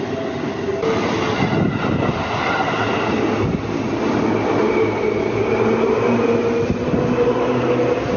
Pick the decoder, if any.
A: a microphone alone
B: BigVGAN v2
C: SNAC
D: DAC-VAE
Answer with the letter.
A